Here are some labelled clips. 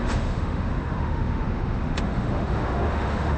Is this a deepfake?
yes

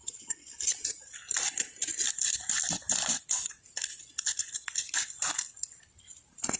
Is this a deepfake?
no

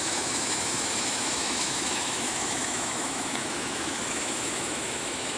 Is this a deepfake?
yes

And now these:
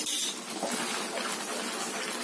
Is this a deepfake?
no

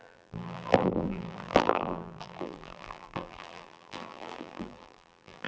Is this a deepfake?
yes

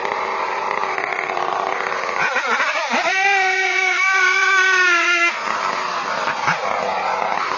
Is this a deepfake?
no